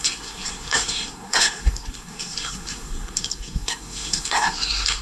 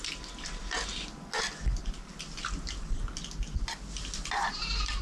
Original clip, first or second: second